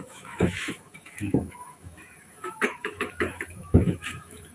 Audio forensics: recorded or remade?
remade